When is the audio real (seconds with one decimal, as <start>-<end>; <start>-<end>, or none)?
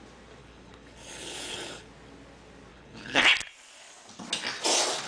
0.0-0.4; 1.9-2.7; 3.2-5.1